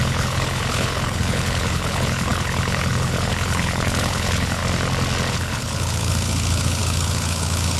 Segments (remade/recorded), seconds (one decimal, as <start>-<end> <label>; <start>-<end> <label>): 0.0-4.6 remade; 4.6-5.3 recorded; 5.3-7.8 remade